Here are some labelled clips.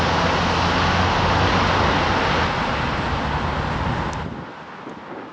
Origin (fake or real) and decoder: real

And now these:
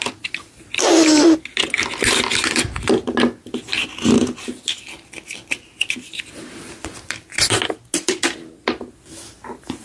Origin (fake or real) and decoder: real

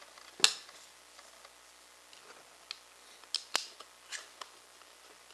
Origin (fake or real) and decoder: real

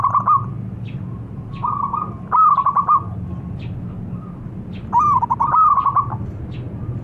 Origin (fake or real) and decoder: real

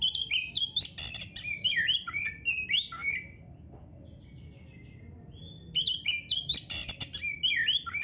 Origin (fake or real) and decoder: real